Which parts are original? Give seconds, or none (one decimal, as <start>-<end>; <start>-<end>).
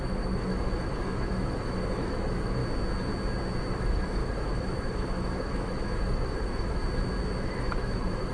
2.6-3.7; 6.8-7.4